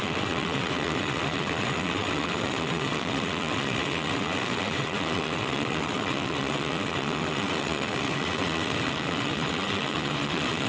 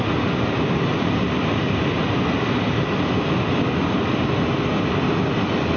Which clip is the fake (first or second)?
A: first